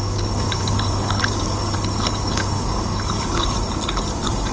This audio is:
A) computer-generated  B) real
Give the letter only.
A